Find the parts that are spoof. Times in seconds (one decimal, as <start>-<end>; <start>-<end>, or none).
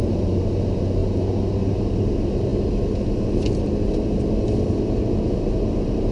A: none